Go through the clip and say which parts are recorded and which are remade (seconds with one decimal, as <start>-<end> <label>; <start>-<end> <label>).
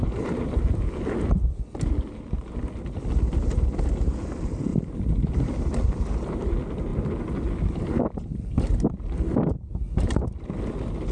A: 0.0-4.7 recorded; 4.7-5.6 remade; 5.6-11.1 recorded